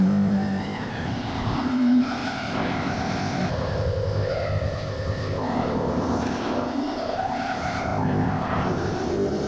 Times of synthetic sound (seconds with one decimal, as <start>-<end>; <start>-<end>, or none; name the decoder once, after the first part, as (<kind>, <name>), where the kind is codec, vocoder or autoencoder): 0.0-9.5 (codec, ZipCodec)